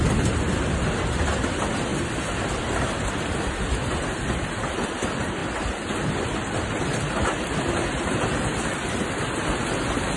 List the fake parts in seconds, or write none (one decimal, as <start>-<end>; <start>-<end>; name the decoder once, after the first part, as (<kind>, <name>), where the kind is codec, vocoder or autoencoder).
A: none